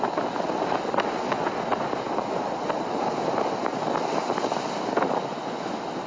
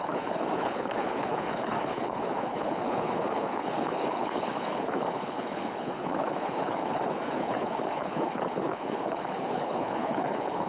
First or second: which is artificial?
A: second